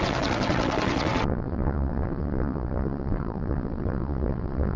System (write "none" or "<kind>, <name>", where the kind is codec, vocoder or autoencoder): vocoder, WaveNeXt